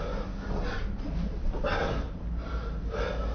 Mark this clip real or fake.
real